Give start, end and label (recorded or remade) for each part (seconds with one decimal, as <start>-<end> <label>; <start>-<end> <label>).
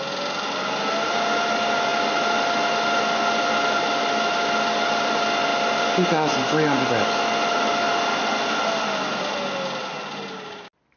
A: 0.0-11.0 recorded